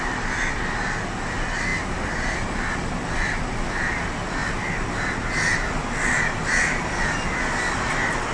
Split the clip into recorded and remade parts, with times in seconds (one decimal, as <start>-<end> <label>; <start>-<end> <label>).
0.0-8.3 recorded